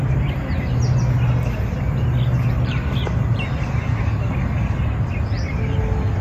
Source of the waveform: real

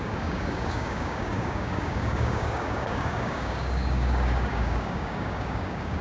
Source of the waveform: fake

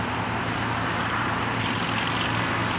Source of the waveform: real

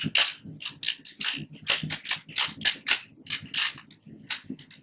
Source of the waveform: real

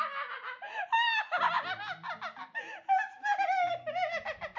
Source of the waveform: real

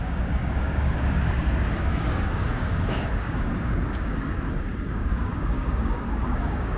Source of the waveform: fake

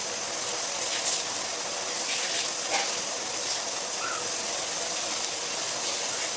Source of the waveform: real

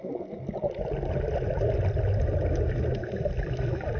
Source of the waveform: real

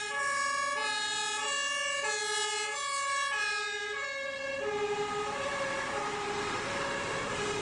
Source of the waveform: real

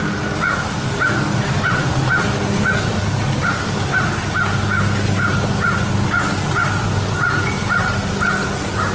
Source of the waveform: real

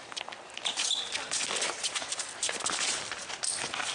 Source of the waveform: real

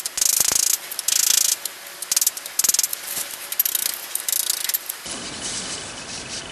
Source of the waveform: real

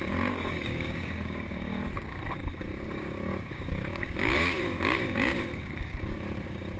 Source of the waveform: fake